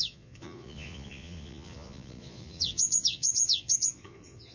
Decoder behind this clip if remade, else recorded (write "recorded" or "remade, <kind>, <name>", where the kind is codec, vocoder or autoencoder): remade, vocoder, Vocos